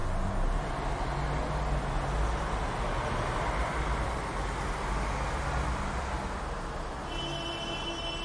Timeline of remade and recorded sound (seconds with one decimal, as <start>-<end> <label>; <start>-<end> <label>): 0.0-8.2 recorded